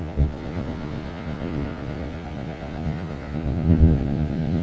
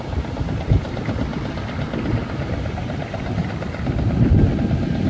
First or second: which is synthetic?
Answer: first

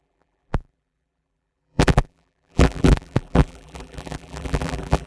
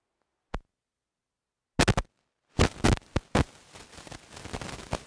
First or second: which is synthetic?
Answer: first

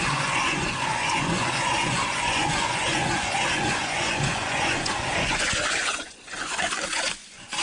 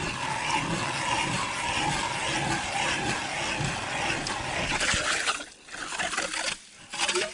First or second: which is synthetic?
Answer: first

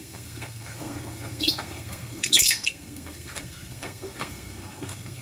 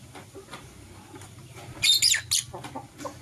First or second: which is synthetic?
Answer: first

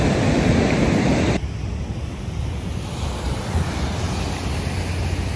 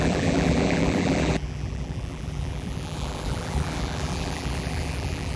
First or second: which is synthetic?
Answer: second